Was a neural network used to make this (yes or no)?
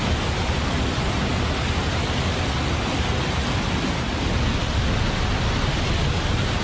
no